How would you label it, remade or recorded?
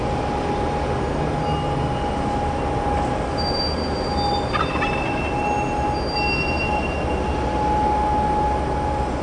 recorded